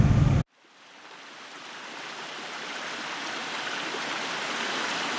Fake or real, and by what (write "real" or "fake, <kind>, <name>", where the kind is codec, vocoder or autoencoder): real